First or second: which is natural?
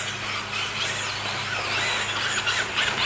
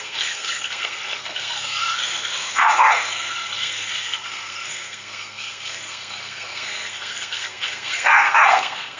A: first